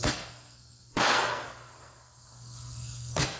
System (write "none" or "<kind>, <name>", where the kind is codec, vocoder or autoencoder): codec, SNAC